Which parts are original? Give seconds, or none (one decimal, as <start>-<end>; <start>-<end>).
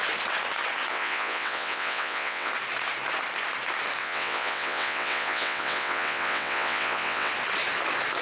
0.0-0.9; 2.5-4.0; 7.3-8.2